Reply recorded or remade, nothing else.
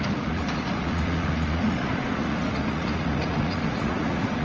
remade